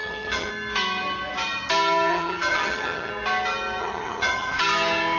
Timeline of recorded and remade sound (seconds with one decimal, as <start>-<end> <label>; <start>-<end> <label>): 0.0-0.5 remade; 0.5-2.1 recorded; 2.1-3.1 remade; 3.1-3.8 recorded; 3.8-4.6 remade; 4.6-5.2 recorded